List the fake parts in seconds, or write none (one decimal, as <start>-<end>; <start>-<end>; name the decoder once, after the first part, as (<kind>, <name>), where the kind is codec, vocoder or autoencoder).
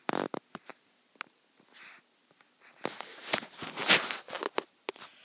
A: none